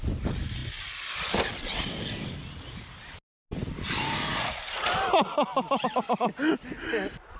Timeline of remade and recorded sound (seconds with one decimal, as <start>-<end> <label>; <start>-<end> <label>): 0.0-7.4 recorded